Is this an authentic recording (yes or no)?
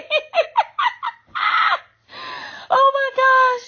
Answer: yes